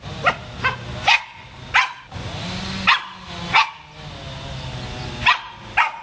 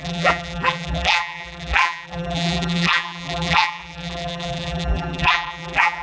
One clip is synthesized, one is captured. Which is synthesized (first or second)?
second